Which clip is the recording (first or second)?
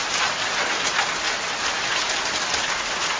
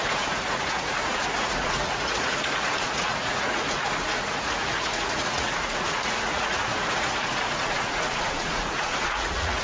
first